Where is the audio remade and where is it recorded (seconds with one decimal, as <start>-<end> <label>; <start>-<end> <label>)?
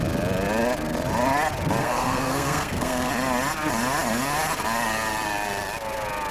0.0-1.8 recorded; 1.8-3.1 remade; 3.1-6.3 recorded